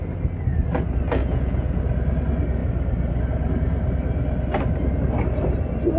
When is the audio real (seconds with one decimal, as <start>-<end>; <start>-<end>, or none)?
0.0-1.2; 1.8-6.0